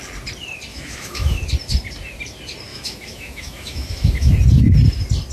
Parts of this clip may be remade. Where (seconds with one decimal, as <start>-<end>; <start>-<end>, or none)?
0.7-1.4; 2.7-4.3